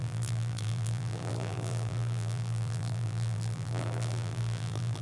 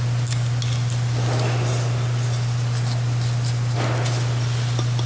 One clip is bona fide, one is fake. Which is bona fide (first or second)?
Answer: second